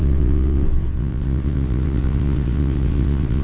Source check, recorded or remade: remade